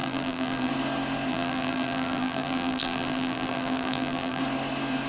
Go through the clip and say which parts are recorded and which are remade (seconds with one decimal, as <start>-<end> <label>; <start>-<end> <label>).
0.0-0.7 remade; 0.7-1.3 recorded; 1.3-4.4 remade; 4.4-5.1 recorded